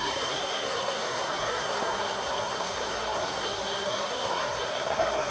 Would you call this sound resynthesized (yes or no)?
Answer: yes